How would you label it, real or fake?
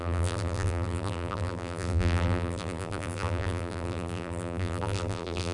fake